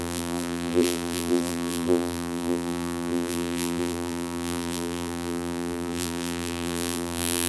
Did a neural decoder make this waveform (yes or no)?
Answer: yes